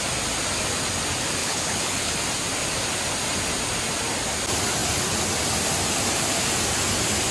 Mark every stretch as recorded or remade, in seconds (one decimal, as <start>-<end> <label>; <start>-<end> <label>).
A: 0.0-1.4 recorded; 1.4-2.1 remade; 2.1-7.3 recorded